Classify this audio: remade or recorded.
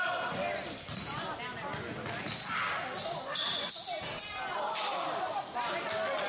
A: recorded